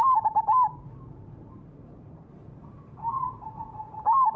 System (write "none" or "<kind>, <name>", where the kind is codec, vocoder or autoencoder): vocoder, BigVGAN v2